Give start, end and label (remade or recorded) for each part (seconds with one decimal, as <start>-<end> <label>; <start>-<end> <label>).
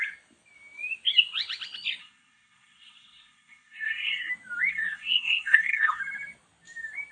0.0-2.0 recorded; 2.0-4.3 remade; 4.3-4.7 recorded; 4.7-6.0 remade; 6.0-7.1 recorded